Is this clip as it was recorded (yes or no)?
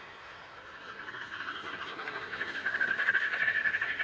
no